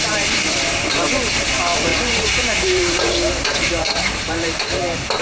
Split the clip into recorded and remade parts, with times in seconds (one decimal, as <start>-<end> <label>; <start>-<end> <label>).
0.0-1.9 recorded; 1.9-5.2 remade